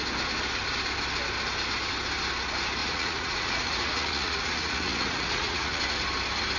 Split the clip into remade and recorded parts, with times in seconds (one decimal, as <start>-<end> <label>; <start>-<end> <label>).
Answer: 0.0-2.8 recorded; 2.8-5.8 remade; 5.8-6.6 recorded